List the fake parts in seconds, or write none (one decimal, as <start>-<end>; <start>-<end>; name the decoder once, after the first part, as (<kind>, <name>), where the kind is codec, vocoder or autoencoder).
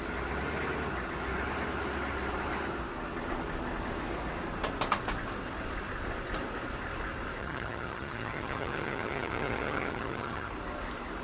7.4-10.5 (vocoder, HiFi-GAN)